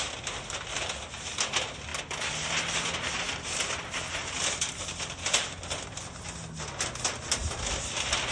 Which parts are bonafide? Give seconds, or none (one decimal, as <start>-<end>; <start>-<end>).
0.0-8.3